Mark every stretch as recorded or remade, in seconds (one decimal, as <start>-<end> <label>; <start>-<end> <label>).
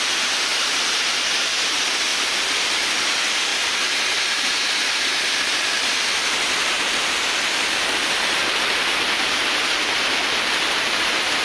0.0-11.4 remade